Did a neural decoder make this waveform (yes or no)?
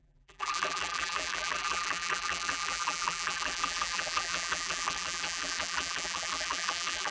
yes